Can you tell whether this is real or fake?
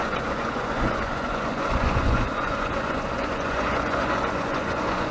fake